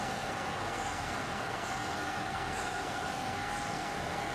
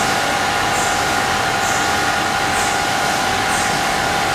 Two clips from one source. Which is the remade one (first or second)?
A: first